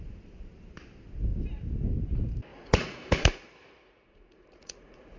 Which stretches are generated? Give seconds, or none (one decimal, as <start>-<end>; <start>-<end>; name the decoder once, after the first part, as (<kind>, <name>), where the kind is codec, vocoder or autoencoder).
2.5-5.2 (vocoder, Vocos)